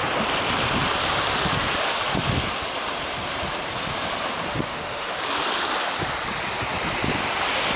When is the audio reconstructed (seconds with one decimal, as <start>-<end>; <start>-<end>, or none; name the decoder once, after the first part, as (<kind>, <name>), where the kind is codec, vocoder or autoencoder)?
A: 4.5-5.2 (autoencoder, DAC-VAE)